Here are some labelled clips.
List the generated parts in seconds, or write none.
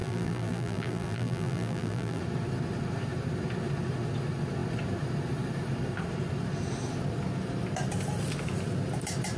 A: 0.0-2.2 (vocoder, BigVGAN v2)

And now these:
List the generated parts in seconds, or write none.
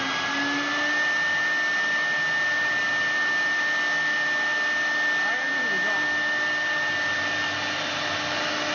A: none